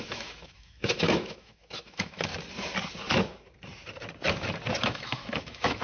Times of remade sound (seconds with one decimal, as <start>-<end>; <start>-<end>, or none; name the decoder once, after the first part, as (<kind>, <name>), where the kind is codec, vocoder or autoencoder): 0.0-2.3 (autoencoder, DAC-VAE); 4.8-5.8